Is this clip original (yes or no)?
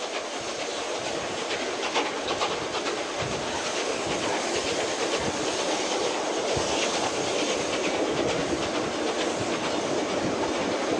yes